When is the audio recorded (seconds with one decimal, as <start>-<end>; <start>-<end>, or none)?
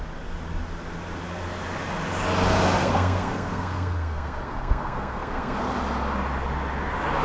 0.0-2.8; 5.7-7.2